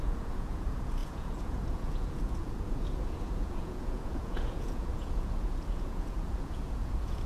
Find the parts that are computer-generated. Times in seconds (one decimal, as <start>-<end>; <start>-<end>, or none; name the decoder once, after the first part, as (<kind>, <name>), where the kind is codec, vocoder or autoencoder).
0.0-7.3 (vocoder, Vocos)